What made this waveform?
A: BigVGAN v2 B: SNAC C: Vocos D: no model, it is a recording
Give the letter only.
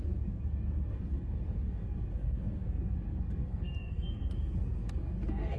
B